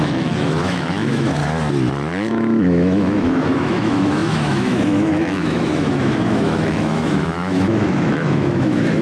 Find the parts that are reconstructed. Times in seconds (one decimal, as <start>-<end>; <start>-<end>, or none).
0.0-1.4; 2.3-9.0